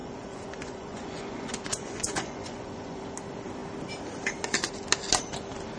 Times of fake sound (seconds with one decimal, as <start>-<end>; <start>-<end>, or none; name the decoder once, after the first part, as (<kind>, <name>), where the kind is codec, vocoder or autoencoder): 0.0-3.0 (vocoder, Vocos)